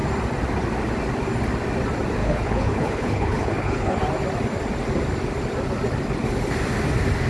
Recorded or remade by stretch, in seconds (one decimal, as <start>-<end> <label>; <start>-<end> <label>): 0.0-2.2 recorded; 2.2-4.0 remade; 4.0-7.3 recorded